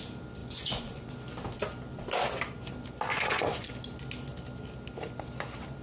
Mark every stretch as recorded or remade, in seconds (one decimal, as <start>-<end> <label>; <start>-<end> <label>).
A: 0.0-0.4 recorded; 0.4-1.1 remade; 1.1-3.1 recorded; 3.1-3.7 remade; 3.7-5.8 recorded